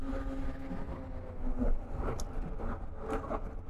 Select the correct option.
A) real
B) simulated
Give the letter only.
A